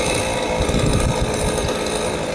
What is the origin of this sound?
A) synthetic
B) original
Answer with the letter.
B